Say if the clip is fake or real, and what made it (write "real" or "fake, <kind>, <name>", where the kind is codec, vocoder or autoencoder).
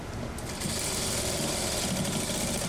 real